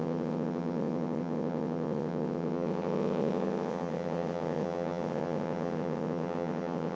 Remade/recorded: remade